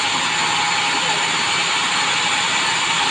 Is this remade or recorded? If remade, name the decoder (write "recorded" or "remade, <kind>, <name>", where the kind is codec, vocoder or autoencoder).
recorded